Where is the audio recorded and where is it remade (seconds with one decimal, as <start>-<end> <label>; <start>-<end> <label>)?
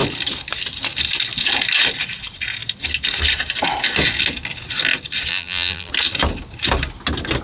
0.0-5.3 recorded; 5.3-5.9 remade; 5.9-7.4 recorded